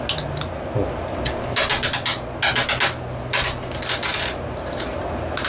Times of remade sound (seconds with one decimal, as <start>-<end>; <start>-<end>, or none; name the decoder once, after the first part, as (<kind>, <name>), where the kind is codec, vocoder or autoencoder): none

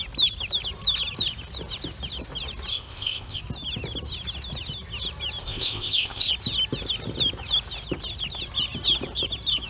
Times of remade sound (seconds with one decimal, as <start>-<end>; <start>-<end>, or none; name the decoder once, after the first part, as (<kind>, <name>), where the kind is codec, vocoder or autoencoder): 2.7-3.4 (codec, ZipCodec); 5.4-6.3

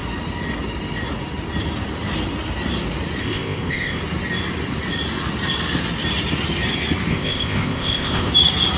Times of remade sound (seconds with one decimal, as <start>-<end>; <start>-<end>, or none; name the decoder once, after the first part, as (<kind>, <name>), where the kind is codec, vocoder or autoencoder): 3.2-4.0 (codec, ZipCodec); 7.1-8.3

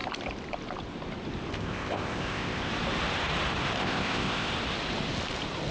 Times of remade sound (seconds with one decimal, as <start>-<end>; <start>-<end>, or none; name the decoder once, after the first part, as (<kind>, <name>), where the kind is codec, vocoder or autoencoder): 1.5-2.7 (codec, ZipCodec); 3.8-4.5

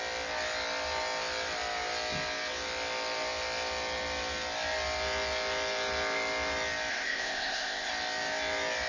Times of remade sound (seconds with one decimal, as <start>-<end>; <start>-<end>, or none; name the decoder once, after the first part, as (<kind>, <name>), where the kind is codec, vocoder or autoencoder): 6.9-7.9 (codec, ZipCodec)

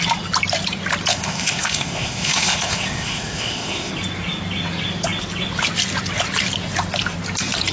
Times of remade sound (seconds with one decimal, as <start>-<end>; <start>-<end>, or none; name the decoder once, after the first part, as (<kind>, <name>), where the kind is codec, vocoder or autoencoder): 1.1-3.9 (codec, ZipCodec)

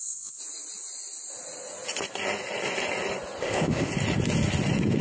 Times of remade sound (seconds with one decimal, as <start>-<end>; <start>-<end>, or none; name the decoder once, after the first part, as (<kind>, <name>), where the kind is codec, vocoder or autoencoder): 0.0-0.4 (codec, ZipCodec); 3.4-3.9

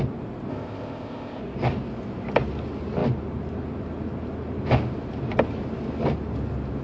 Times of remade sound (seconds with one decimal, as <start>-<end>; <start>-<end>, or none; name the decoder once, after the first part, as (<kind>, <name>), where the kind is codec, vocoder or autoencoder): 0.5-1.4 (codec, ZipCodec)